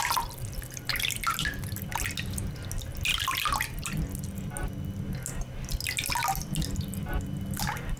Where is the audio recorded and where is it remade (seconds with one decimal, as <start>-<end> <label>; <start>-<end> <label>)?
0.0-8.0 recorded